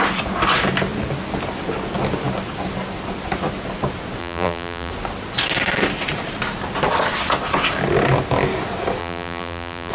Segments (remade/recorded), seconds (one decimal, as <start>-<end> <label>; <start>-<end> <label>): 0.0-4.2 recorded; 4.2-4.9 remade; 4.9-9.0 recorded; 9.0-9.9 remade